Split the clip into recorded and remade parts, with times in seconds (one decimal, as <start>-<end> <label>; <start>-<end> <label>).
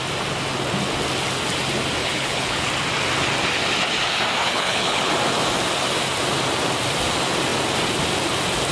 0.0-2.0 recorded; 2.0-2.7 remade; 2.7-4.4 recorded; 4.4-5.1 remade; 5.1-8.7 recorded